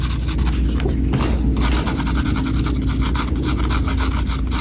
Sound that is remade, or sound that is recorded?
recorded